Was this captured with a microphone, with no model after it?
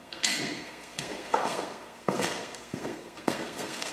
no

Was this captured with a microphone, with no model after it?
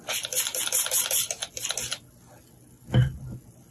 yes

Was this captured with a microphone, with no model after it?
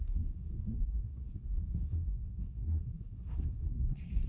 no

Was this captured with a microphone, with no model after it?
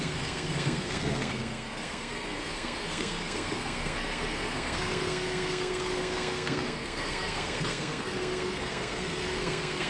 no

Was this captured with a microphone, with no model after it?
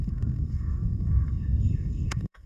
no